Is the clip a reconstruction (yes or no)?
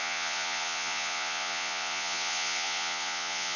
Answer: yes